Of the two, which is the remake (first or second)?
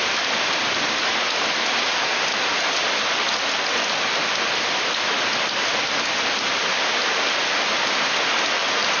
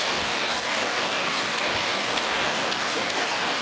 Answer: second